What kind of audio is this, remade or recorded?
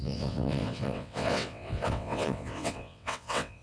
remade